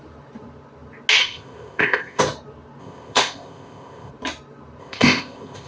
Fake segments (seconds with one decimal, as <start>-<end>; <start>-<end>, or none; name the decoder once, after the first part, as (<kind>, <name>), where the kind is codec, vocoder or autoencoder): 1.2-2.2 (codec, ZipCodec); 2.8-4.1; 4.8-5.7